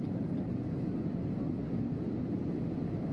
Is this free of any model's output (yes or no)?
yes